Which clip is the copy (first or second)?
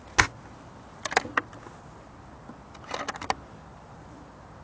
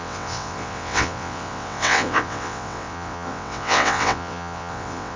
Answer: second